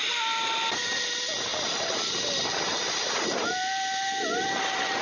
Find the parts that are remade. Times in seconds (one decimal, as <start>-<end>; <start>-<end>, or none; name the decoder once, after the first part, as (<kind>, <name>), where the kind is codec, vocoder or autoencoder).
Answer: none